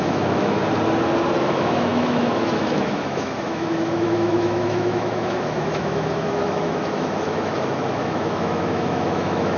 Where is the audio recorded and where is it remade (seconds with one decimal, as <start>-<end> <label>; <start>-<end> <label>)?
0.0-0.6 remade; 0.6-1.4 recorded; 1.4-9.6 remade